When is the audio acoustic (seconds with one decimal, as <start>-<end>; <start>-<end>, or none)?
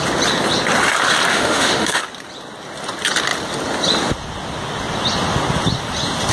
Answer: 0.0-1.3; 2.0-6.3